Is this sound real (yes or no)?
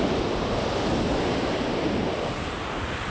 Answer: yes